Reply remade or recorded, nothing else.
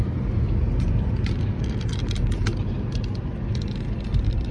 recorded